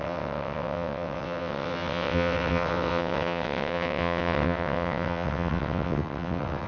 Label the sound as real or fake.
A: fake